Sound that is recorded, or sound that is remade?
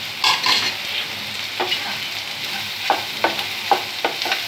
recorded